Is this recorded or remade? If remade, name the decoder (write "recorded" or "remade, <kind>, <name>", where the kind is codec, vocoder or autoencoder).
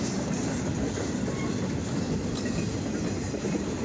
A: remade, vocoder, BigVGAN v2